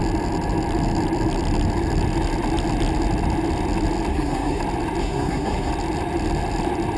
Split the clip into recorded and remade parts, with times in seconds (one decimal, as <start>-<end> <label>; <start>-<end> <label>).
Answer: 0.0-4.1 recorded; 4.1-4.6 remade; 4.6-5.0 recorded; 5.0-5.7 remade; 5.7-7.0 recorded